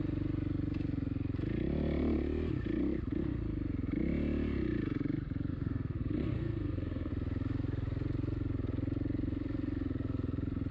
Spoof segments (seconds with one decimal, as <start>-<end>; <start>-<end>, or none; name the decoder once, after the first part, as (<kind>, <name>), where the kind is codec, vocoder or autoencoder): 5.5-7.1 (codec, SNAC)